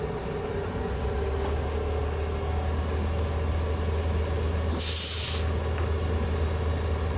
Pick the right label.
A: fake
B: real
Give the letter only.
B